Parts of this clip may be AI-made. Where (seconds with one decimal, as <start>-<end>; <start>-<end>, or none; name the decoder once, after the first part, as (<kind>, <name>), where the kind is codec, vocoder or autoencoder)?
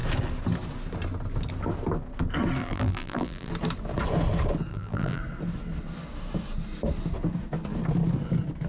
2.6-3.5 (vocoder, BigVGAN v2); 4.7-5.2